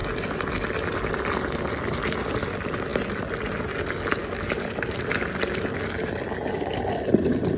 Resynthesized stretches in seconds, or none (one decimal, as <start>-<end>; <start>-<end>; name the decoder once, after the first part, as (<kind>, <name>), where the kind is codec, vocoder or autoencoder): 4.2-5.0 (codec, DAC)